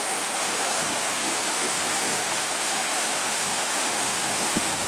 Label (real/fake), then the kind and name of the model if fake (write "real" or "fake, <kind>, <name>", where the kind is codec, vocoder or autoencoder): fake, autoencoder, DAC-VAE